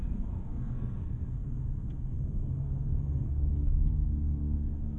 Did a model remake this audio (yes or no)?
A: yes